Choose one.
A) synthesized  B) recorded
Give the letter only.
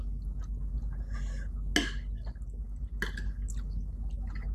B